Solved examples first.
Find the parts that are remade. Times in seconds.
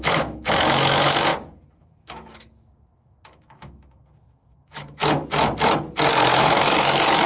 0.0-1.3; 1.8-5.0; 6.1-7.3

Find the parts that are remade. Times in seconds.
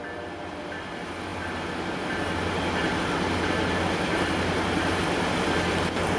none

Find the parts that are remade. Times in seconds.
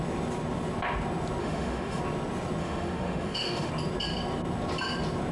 1.4-2.0; 2.6-3.7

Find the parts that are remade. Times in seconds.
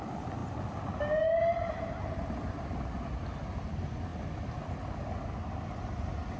none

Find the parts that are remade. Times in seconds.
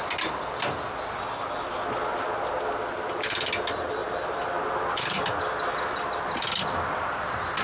none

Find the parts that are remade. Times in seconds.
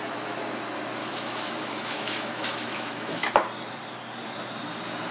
1.0-3.3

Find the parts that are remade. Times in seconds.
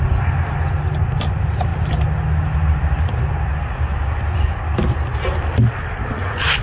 none